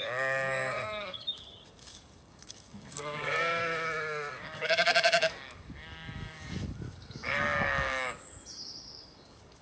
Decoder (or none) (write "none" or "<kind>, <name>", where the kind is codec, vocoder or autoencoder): codec, DAC